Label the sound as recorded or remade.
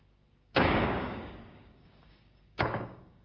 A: remade